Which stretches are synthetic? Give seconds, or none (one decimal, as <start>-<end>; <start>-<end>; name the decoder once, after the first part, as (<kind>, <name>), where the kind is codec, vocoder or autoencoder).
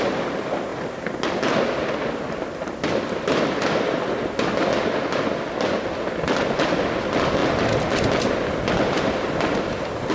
none